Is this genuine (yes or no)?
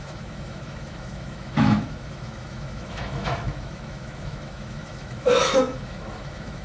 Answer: no